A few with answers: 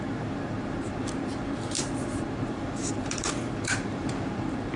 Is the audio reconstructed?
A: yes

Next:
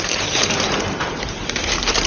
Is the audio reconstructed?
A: yes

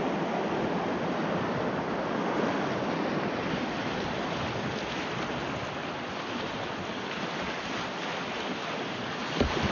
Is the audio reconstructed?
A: no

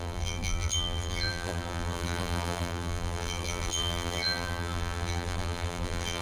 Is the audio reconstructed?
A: yes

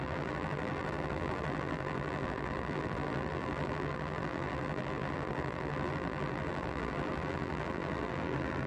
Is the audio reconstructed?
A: yes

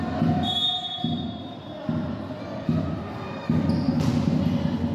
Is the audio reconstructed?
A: no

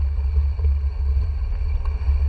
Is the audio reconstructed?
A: no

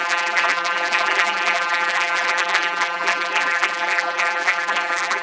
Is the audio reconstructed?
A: yes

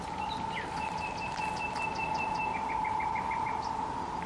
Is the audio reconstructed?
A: no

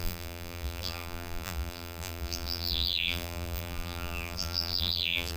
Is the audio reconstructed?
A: yes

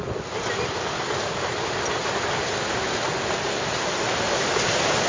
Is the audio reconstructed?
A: no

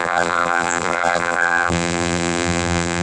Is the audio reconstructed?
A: yes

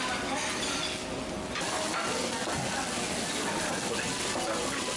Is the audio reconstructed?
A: no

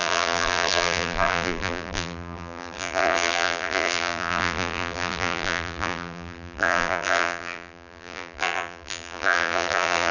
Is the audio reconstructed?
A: yes